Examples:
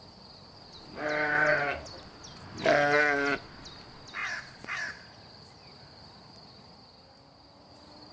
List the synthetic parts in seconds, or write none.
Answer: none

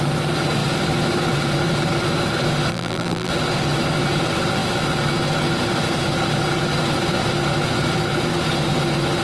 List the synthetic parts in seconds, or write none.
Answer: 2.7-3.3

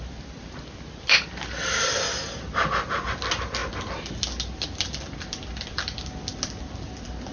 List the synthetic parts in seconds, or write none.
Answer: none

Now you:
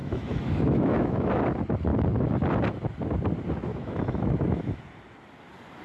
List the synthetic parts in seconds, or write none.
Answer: 0.0-1.3; 3.7-4.8

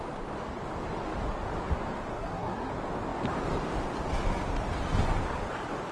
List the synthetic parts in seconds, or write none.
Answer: 2.1-2.7